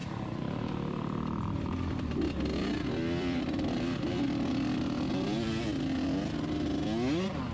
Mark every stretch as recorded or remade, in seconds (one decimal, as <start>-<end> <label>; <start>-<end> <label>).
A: 0.0-4.5 remade; 4.5-5.1 recorded; 5.1-5.6 remade; 5.6-7.5 recorded